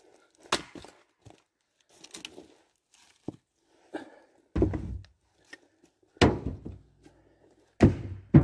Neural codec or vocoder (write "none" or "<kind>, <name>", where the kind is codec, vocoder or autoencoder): none